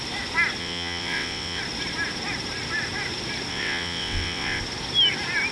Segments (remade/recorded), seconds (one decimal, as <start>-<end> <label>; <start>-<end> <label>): 0.0-0.6 recorded; 0.6-1.6 remade; 1.6-3.5 recorded; 3.5-4.6 remade; 4.6-5.5 recorded